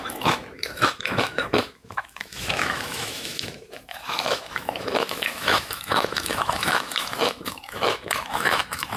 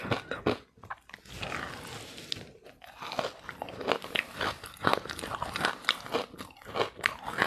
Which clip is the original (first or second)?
second